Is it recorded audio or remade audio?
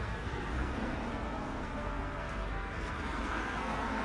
remade